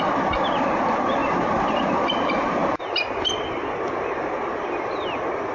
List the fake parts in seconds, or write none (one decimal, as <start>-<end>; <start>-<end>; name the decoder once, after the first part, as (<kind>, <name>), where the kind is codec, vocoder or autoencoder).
none